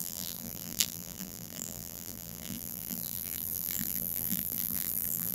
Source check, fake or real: fake